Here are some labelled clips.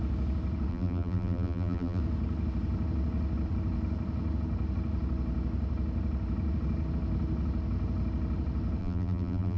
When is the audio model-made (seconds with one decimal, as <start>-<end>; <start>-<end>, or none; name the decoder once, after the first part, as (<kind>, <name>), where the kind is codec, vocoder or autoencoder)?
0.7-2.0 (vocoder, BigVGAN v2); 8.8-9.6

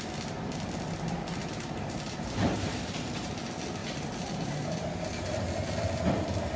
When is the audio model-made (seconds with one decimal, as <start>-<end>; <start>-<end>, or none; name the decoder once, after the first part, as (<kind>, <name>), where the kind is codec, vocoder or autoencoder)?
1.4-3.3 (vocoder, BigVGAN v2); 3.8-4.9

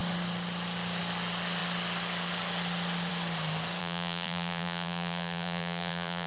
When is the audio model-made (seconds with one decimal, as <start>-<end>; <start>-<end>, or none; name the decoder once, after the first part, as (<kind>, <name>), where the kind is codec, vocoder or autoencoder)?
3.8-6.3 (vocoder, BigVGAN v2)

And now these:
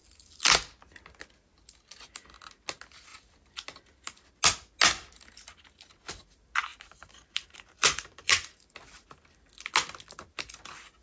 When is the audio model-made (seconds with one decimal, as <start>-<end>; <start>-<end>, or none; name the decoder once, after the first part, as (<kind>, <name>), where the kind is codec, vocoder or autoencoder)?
6.7-8.6 (vocoder, BigVGAN v2)

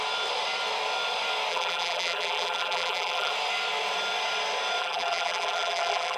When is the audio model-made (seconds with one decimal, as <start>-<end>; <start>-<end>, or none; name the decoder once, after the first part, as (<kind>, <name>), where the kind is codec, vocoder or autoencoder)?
1.5-3.3 (vocoder, BigVGAN v2); 4.8-6.2